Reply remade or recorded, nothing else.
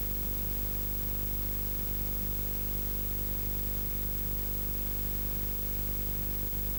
recorded